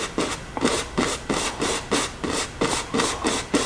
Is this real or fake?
real